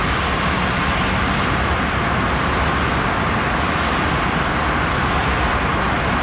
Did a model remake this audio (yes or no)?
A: no